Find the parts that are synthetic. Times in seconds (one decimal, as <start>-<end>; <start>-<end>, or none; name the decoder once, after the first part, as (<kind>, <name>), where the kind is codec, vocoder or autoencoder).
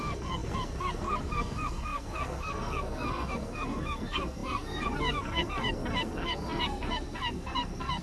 0.0-8.0 (codec, SNAC)